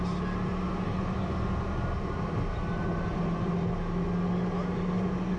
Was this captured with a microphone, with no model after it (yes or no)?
yes